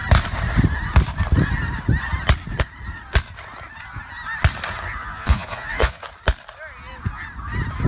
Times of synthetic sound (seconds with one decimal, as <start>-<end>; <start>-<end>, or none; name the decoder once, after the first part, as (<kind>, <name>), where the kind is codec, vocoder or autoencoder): 5.0-6.1 (vocoder, Vocos)